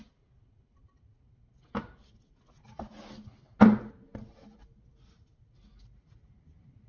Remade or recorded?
recorded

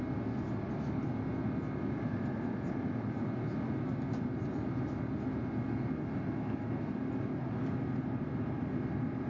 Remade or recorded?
recorded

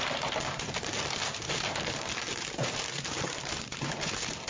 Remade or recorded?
remade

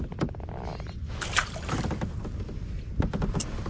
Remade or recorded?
recorded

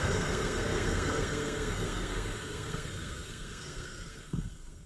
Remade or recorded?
remade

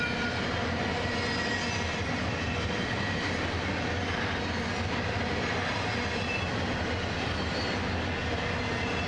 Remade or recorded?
recorded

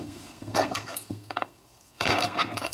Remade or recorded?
remade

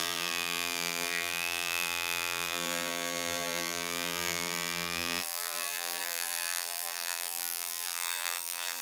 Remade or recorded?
remade